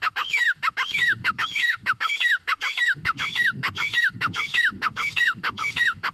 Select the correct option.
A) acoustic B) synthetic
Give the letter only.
B